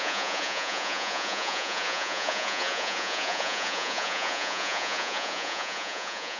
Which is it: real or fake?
fake